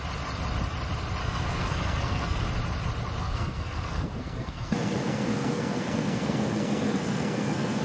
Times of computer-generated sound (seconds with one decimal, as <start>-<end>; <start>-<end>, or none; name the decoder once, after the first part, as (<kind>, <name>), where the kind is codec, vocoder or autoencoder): 1.2-2.4 (codec, SNAC); 3.2-7.8